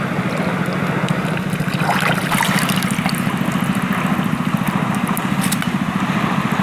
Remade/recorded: recorded